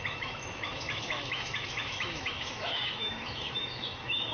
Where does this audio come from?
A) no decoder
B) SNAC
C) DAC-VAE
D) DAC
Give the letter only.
C